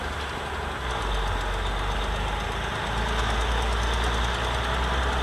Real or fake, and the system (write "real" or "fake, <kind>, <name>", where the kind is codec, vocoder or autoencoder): real